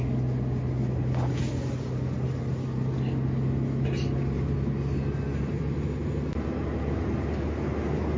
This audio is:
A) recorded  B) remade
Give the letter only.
A